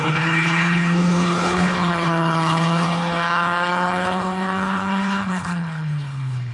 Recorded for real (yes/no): no